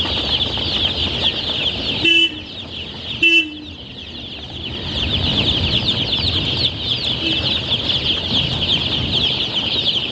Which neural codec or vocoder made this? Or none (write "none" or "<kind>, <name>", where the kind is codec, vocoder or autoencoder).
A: none